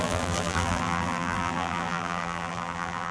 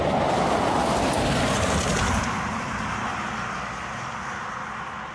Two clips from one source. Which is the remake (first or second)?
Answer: first